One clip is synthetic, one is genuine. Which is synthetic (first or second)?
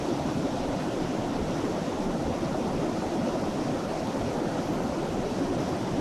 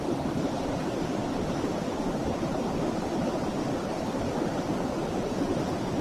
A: second